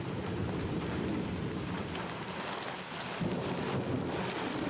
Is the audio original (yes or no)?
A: yes